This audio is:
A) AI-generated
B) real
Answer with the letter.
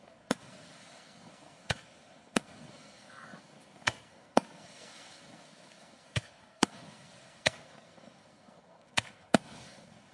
A